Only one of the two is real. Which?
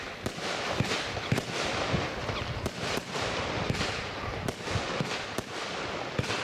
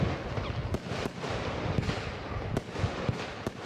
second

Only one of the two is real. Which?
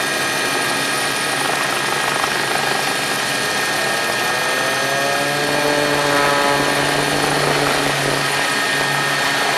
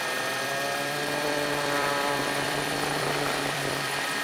first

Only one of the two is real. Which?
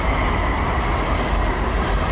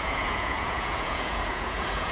first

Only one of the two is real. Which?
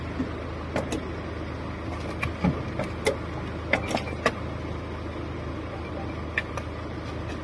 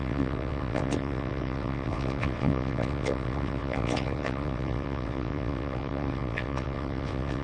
first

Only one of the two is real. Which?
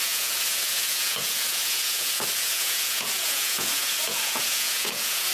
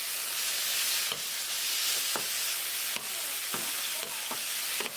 second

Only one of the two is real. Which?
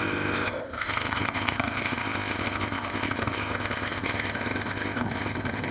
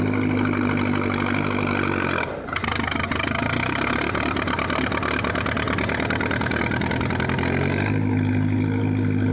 second